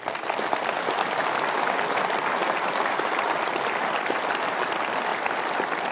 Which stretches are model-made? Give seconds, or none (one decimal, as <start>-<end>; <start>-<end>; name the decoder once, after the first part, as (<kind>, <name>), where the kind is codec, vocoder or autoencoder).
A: none